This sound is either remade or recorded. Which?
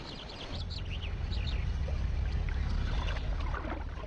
recorded